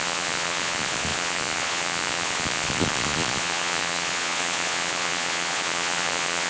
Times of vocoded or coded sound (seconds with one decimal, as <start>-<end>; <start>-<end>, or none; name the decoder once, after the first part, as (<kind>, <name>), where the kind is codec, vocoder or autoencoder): 0.0-6.5 (vocoder, Vocos)